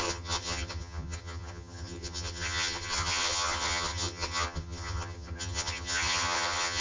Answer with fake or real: fake